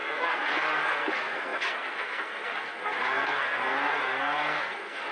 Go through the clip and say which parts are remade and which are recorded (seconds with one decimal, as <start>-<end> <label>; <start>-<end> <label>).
0.0-5.1 remade